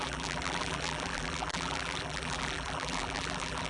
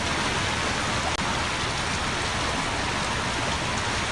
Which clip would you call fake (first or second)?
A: first